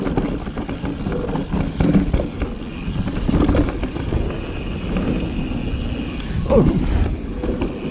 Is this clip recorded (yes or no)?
yes